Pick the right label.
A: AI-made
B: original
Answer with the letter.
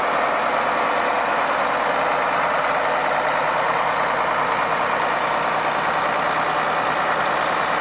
B